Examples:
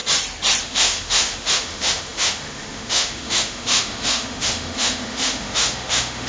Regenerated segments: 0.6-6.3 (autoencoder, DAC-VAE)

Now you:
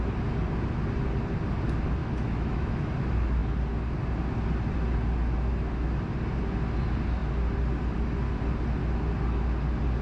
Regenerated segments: 2.0-2.9 (autoencoder, DAC-VAE)

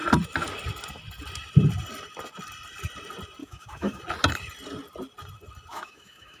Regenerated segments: 3.4-4.0 (autoencoder, DAC-VAE); 5.7-6.4

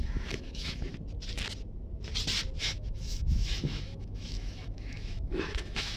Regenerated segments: 0.0-0.9 (autoencoder, DAC-VAE); 2.6-6.0

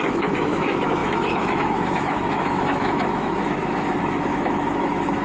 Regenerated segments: 0.0-5.2 (autoencoder, DAC-VAE)

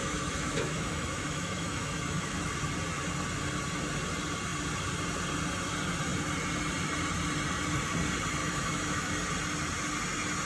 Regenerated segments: 0.0-2.5 (autoencoder, DAC-VAE); 8.4-9.1

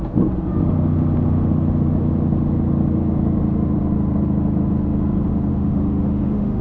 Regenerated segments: 5.5-6.6 (autoencoder, DAC-VAE)